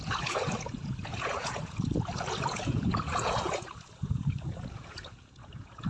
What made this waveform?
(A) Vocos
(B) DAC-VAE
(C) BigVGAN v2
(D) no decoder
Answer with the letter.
A